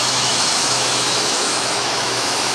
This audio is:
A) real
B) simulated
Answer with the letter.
B